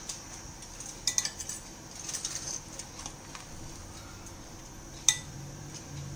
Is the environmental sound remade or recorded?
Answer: recorded